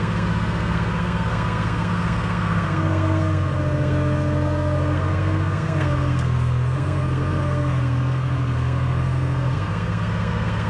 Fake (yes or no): yes